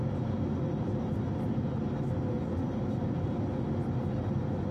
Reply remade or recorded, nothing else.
recorded